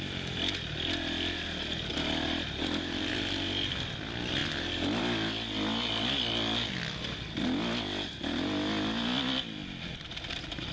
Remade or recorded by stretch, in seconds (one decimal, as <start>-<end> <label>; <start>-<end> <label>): 0.0-10.7 recorded